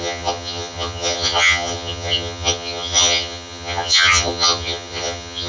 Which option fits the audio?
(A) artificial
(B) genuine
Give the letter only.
A